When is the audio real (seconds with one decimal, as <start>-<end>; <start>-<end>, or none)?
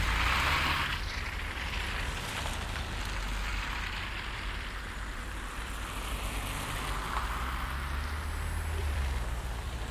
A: 0.0-0.9; 2.3-3.5; 6.8-8.8